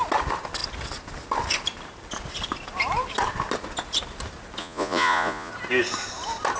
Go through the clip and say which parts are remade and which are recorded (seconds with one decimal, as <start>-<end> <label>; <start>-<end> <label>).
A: 0.0-4.6 recorded; 4.6-5.5 remade; 5.5-6.6 recorded